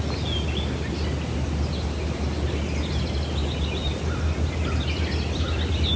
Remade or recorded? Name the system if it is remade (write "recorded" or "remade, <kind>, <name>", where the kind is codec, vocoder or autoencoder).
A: recorded